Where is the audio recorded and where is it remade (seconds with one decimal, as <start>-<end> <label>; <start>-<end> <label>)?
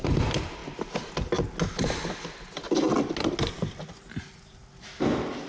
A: 0.0-0.6 remade; 0.6-3.9 recorded; 3.9-4.6 remade; 4.6-5.5 recorded